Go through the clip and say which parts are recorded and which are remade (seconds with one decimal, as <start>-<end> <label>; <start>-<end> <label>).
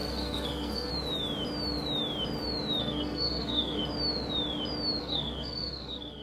0.0-0.9 remade; 0.9-2.8 recorded; 2.8-3.8 remade; 3.8-5.0 recorded; 5.0-6.2 remade